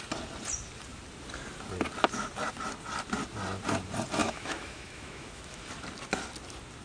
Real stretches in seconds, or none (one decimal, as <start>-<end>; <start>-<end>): 0.0-4.2; 5.6-6.8